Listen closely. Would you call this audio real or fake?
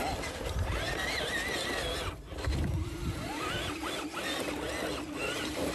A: real